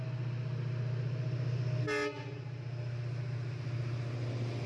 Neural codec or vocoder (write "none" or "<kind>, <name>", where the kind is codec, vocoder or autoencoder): none